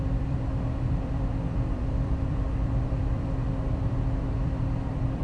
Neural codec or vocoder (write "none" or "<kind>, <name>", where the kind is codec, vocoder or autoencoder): vocoder, BigVGAN v2